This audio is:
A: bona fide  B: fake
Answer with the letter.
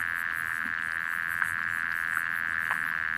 A